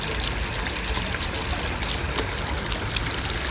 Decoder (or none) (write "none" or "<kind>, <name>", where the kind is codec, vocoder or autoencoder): none